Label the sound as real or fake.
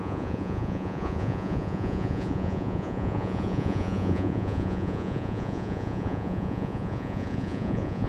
fake